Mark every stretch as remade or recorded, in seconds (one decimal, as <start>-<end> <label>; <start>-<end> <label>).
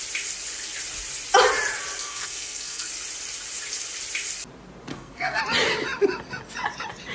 0.0-2.0 recorded; 2.0-2.9 remade; 2.9-4.9 recorded; 4.9-5.4 remade; 5.4-7.1 recorded